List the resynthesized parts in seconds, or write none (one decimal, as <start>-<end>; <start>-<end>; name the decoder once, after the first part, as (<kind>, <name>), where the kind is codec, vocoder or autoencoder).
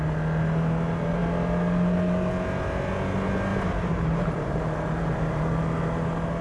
3.5-5.4 (vocoder, BigVGAN v2)